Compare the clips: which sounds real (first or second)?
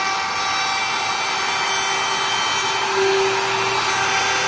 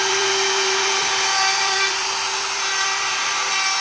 first